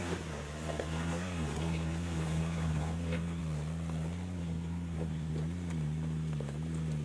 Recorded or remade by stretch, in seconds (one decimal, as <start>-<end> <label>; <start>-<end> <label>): 0.0-3.4 remade; 3.4-4.4 recorded; 4.4-5.3 remade; 5.3-7.0 recorded